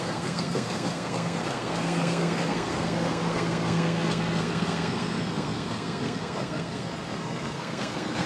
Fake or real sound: fake